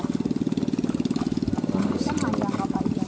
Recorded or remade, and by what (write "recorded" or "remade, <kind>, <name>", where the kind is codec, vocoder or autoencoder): recorded